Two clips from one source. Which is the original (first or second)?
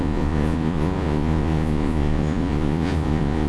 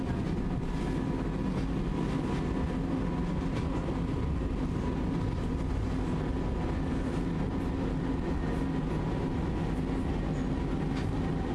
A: second